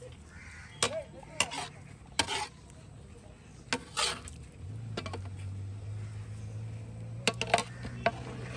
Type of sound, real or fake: real